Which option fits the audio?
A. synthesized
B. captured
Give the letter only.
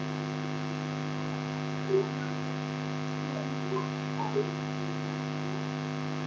B